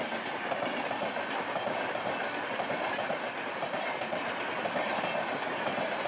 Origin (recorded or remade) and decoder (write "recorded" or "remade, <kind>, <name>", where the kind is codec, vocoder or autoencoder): recorded